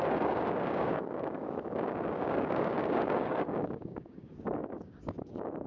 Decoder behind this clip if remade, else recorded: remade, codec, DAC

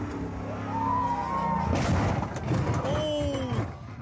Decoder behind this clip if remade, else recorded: recorded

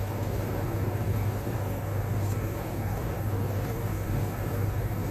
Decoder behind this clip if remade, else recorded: remade, codec, DAC